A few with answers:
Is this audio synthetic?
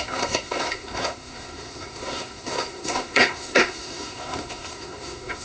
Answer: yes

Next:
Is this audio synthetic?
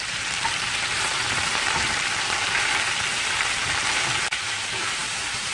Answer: yes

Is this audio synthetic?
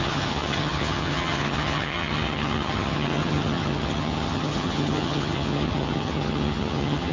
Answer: yes